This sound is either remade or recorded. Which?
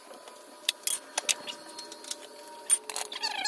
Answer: recorded